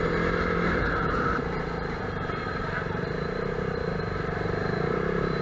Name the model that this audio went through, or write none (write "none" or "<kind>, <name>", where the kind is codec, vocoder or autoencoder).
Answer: vocoder, BigVGAN v2